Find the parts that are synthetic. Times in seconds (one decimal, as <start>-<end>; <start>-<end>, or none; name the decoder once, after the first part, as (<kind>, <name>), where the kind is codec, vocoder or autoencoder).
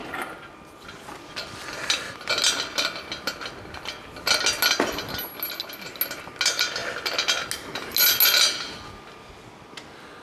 none